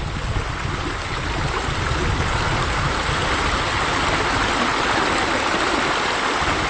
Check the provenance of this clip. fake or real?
real